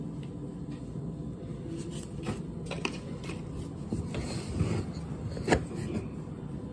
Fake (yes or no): no